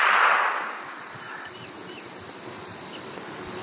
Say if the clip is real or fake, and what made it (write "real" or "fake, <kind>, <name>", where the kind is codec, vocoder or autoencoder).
real